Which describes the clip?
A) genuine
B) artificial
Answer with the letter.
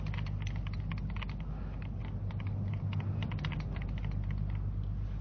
A